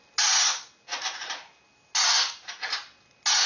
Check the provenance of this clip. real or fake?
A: real